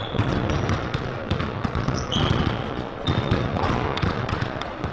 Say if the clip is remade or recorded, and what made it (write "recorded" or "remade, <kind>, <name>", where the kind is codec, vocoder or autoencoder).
remade, vocoder, Vocos